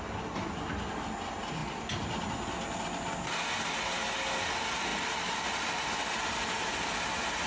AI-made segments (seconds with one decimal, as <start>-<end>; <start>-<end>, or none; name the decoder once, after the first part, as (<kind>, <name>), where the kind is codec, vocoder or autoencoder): none